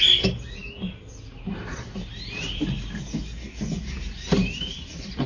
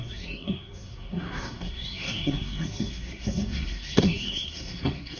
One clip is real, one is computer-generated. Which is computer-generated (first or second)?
second